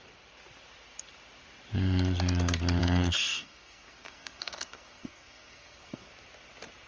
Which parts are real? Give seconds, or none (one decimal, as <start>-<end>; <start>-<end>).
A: 0.0-2.8; 6.1-6.9